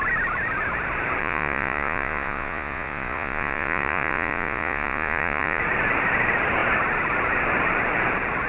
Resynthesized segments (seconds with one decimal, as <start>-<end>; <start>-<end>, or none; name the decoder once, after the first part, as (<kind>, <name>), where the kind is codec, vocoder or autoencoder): 1.2-5.6 (vocoder, Vocos)